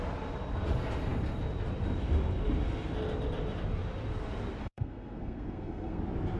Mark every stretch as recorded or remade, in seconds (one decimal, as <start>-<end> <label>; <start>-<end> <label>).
0.0-4.6 recorded; 4.6-6.0 remade; 6.0-6.4 recorded